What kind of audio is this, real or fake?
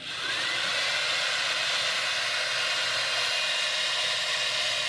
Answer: real